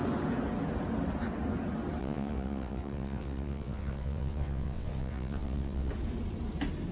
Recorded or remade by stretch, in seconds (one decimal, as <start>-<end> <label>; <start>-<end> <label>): 0.0-2.0 recorded; 2.0-5.9 remade; 5.9-6.9 recorded